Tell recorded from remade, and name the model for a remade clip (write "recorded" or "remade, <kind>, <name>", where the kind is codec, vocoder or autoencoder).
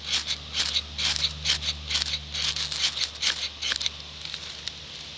recorded